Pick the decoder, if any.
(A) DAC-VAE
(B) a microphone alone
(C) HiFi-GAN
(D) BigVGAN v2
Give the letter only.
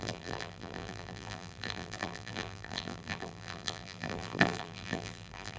D